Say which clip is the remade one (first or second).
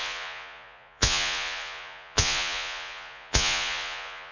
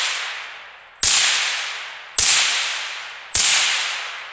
first